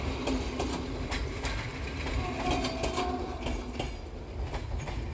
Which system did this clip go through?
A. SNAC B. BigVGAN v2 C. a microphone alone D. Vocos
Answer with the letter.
C